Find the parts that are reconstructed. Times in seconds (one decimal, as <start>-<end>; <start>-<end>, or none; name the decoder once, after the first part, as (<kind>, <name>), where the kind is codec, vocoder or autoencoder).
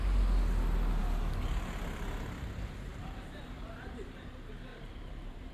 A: 2.9-4.3 (vocoder, BigVGAN v2); 4.7-5.5